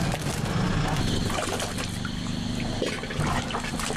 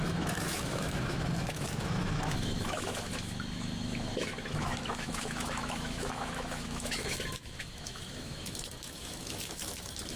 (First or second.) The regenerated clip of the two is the second